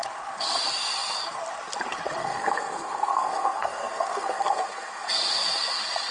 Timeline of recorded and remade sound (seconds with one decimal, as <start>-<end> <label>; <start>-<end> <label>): 0.0-2.2 recorded; 2.2-5.1 remade; 5.1-6.1 recorded